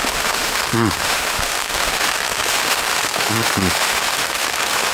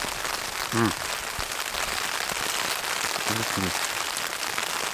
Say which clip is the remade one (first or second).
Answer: first